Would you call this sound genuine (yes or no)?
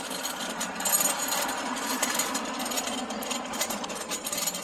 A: yes